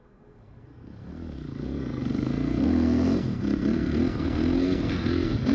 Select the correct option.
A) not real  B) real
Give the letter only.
A